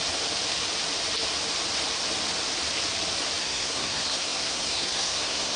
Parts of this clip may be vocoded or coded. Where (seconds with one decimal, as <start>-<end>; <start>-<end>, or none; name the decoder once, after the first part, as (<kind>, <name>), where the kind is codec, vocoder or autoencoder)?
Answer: 3.4-5.6 (codec, SNAC)